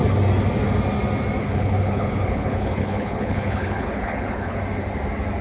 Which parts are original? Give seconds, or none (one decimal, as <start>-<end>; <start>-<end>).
0.0-1.4; 4.6-5.4